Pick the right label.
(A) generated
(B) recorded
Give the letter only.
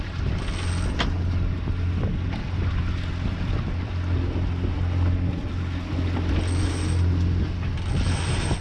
B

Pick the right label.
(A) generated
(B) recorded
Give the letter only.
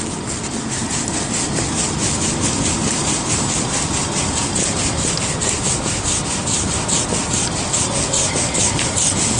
B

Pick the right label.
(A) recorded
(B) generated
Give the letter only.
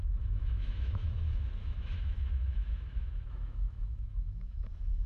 B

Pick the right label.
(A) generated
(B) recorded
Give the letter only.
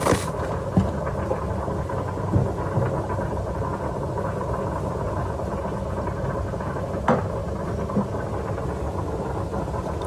B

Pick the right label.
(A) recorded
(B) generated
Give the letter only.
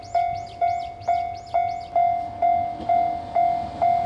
A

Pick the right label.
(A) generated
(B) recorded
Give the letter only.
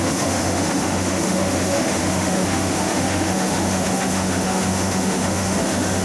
A